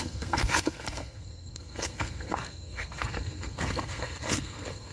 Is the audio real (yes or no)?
no